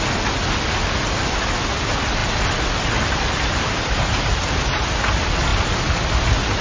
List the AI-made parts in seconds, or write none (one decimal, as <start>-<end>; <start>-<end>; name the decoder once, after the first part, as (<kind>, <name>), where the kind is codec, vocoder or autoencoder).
none